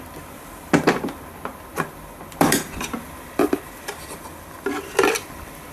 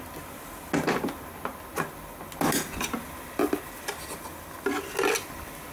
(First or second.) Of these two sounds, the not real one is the first